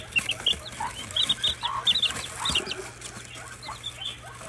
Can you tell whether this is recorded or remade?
recorded